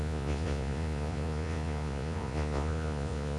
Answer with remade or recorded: remade